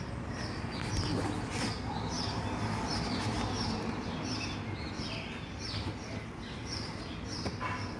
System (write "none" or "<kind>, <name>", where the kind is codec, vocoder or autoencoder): none